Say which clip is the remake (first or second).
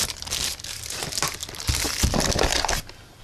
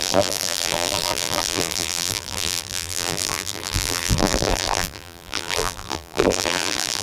second